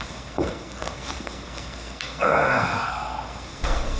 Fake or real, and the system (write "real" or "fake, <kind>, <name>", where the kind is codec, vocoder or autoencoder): fake, codec, SNAC